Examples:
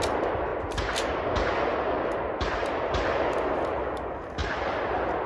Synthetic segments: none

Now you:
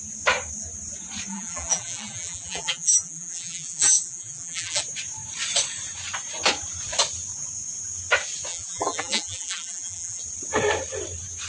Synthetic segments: 1.3-4.8 (vocoder, BigVGAN v2); 8.5-10.2

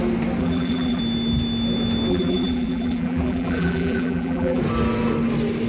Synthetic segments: 0.4-1.0 (vocoder, BigVGAN v2); 2.1-4.6